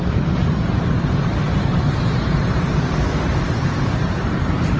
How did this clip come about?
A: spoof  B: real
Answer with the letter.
A